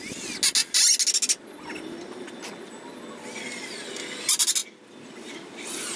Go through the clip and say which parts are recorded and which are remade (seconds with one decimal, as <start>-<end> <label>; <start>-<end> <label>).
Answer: 0.0-6.0 recorded